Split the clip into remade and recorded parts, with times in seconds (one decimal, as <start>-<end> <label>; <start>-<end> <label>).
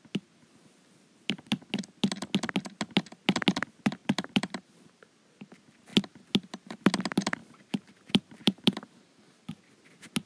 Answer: 0.0-4.0 recorded; 4.0-5.1 remade; 5.1-7.4 recorded; 7.4-9.5 remade; 9.5-10.3 recorded